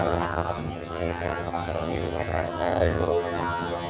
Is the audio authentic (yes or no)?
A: no